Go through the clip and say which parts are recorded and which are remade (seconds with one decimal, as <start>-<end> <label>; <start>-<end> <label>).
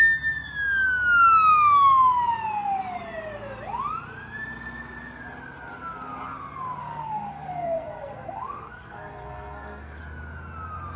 0.0-6.8 recorded; 6.8-10.0 remade; 10.0-11.0 recorded